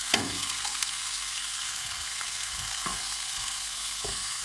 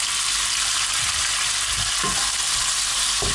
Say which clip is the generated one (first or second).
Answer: first